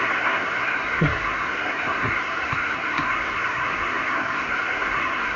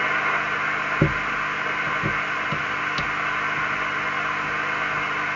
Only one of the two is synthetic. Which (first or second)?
first